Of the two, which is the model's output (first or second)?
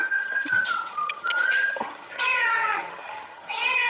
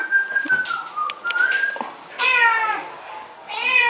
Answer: first